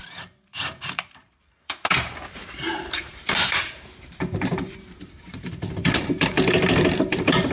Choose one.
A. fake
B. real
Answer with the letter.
A